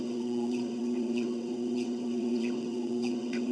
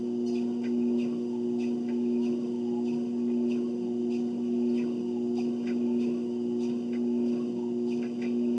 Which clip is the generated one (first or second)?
first